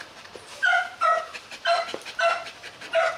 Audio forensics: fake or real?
fake